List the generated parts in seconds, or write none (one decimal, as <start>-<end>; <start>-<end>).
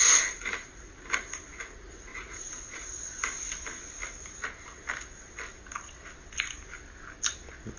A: 2.1-2.8